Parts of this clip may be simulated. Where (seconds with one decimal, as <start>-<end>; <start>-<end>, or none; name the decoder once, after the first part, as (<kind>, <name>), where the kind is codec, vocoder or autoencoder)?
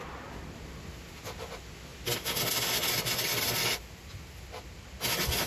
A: none